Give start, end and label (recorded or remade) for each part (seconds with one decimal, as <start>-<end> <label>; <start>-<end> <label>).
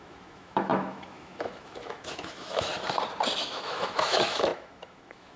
0.0-2.7 remade; 2.7-3.4 recorded; 3.4-5.4 remade